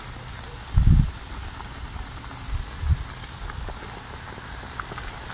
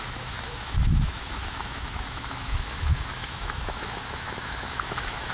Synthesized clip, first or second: second